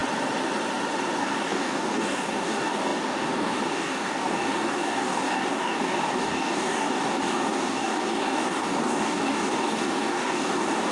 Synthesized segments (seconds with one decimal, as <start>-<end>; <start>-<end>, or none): 1.2-10.9